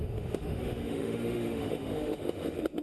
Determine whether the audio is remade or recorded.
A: remade